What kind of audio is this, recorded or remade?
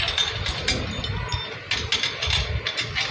recorded